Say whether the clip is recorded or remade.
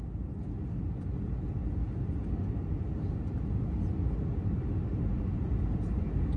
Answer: recorded